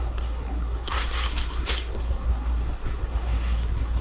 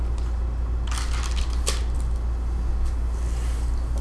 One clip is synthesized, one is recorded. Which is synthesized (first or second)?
first